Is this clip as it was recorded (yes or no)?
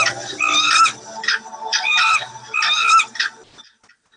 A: yes